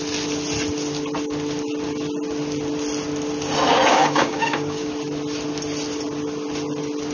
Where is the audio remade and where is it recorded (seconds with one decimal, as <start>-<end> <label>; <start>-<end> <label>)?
0.0-3.9 recorded; 3.9-4.9 remade; 4.9-7.1 recorded